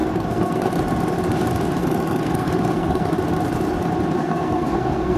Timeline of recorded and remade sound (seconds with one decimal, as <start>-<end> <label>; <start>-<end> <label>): 0.0-0.7 remade; 0.7-1.8 recorded; 1.8-3.1 remade; 3.1-4.2 recorded; 4.2-5.2 remade